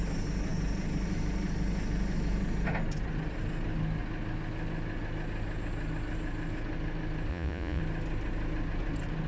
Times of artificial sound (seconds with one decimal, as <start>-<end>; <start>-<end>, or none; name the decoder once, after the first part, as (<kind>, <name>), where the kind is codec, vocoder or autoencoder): 7.3-7.8 (vocoder, Vocos)